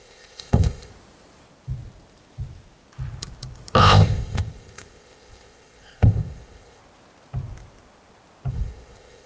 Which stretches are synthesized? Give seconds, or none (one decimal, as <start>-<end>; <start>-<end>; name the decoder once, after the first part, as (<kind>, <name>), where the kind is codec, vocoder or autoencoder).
0.0-0.9 (codec, ZipCodec); 3.8-6.8; 8.5-9.3

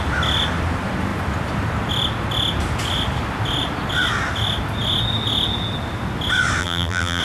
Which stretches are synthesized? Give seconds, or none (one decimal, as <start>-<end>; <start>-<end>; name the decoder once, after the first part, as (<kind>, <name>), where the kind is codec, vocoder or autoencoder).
6.6-7.2 (vocoder, BigVGAN v2)

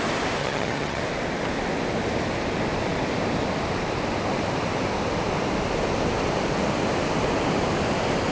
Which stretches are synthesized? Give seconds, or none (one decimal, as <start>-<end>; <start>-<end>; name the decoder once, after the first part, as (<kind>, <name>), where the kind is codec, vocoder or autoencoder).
0.4-1.0 (vocoder, HiFi-GAN)

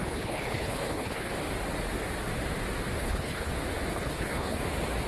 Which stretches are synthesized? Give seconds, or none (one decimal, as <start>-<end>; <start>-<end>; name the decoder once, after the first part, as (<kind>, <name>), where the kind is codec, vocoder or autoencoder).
0.0-1.3 (codec, HILCodec); 3.0-3.5; 3.9-4.6